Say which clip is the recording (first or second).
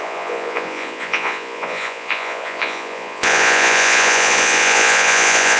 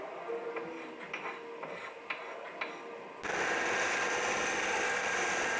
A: second